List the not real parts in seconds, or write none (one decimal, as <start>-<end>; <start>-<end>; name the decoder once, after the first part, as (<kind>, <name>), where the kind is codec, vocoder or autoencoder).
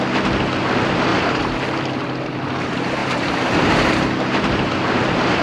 1.1-1.6 (vocoder, BigVGAN v2); 3.0-5.4